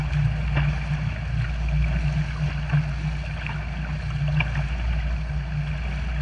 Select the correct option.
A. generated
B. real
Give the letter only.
B